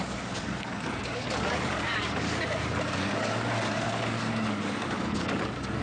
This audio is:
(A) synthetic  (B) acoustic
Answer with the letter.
A